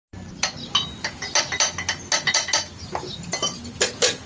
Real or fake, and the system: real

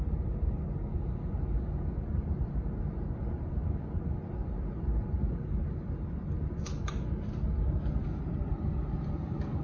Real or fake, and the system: real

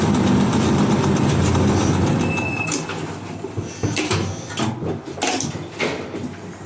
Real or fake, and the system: real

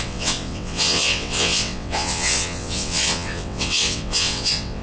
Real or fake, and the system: fake, vocoder, WaveNeXt